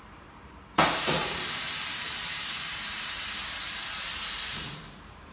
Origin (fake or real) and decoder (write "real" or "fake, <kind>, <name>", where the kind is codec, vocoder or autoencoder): fake, vocoder, BigVGAN v2